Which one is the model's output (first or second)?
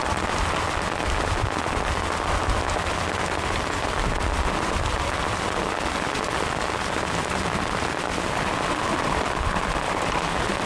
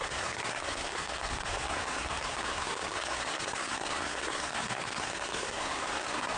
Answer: second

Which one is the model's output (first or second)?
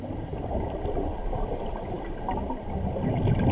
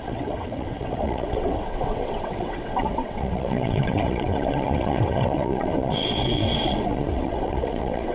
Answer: second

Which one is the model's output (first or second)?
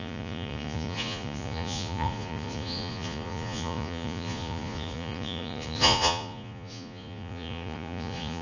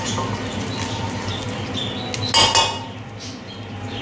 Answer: first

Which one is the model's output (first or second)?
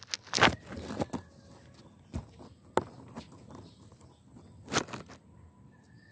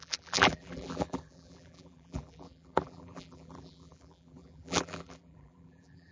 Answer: second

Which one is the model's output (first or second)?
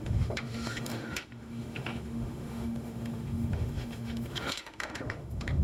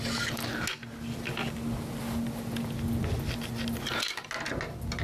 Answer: first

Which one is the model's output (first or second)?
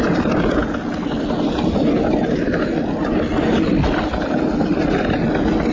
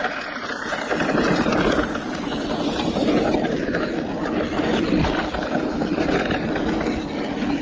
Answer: second